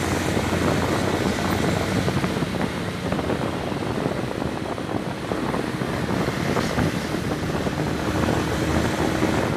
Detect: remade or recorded recorded